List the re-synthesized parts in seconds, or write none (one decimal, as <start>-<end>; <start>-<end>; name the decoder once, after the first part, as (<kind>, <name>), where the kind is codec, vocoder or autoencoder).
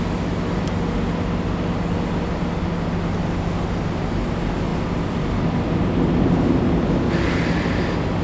none